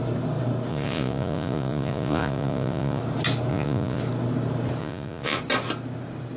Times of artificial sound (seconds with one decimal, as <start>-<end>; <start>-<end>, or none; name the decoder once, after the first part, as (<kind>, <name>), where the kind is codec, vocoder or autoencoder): 0.7-3.0 (vocoder, Vocos); 3.5-4.0; 4.8-5.4